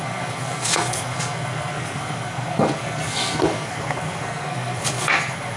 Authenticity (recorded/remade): remade